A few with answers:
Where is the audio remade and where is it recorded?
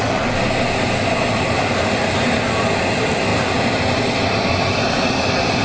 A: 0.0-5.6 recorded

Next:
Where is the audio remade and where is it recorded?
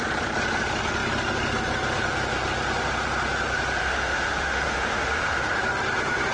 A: 0.0-3.8 recorded; 3.8-5.6 remade; 5.6-6.3 recorded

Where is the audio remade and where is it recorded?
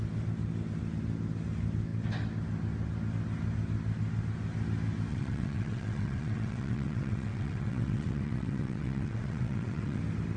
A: 0.0-5.1 recorded; 5.1-10.0 remade; 10.0-10.4 recorded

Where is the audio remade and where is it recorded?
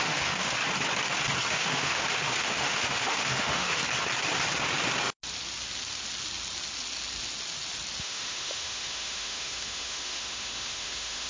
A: 0.0-0.6 remade; 0.6-1.5 recorded; 1.5-3.8 remade; 3.8-8.0 recorded; 8.0-11.3 remade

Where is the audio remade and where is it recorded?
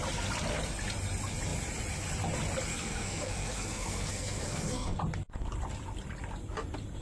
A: 0.0-2.7 recorded; 2.7-5.0 remade; 5.0-7.0 recorded